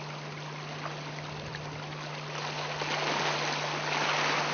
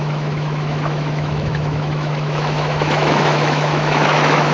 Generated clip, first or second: second